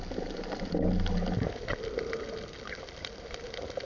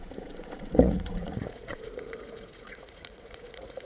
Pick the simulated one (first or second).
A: second